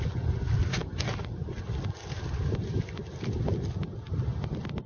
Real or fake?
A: real